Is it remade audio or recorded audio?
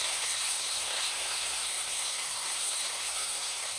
remade